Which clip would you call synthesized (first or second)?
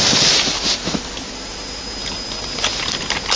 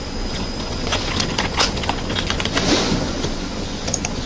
second